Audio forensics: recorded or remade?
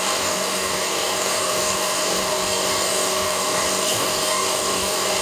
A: remade